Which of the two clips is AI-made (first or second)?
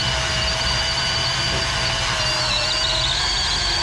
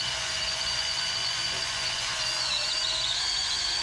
second